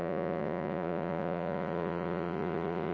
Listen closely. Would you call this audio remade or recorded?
remade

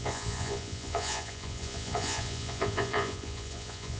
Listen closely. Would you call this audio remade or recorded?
remade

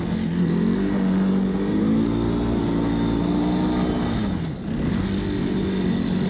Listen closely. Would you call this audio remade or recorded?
recorded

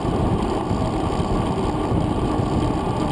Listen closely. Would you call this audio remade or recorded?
recorded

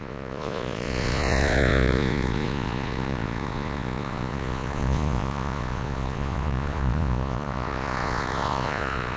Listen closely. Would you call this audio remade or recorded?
remade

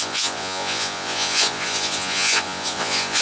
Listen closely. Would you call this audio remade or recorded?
remade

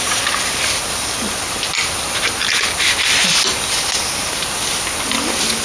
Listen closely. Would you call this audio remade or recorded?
recorded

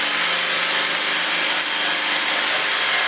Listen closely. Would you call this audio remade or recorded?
recorded